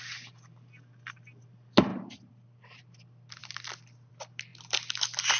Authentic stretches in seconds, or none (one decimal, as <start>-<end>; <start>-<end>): 0.0-1.9; 2.8-5.4